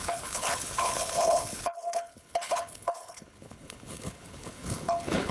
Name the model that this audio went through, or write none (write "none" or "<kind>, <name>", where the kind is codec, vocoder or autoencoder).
codec, HILCodec